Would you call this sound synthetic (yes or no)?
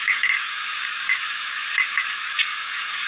yes